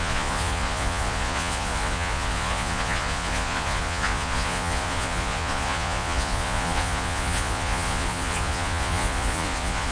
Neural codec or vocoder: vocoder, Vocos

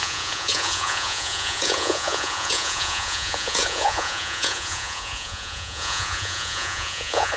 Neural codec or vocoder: vocoder, Vocos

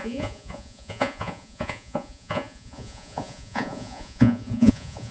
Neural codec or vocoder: vocoder, Vocos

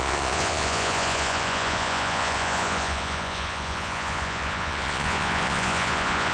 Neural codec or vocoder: vocoder, Vocos